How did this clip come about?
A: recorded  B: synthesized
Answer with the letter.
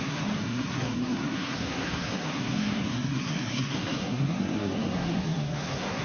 B